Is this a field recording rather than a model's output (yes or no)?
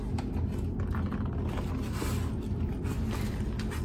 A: yes